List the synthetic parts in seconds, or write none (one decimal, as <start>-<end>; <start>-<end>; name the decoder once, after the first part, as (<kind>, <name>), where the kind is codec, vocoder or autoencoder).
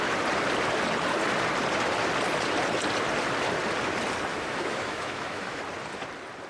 4.3-5.6 (autoencoder, DAC-VAE)